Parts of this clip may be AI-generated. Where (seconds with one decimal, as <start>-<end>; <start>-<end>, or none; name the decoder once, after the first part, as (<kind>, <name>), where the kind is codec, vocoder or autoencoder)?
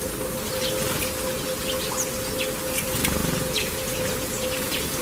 3.2-5.0 (vocoder, Vocos)